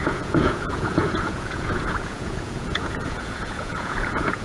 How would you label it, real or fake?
fake